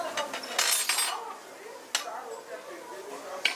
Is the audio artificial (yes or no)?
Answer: no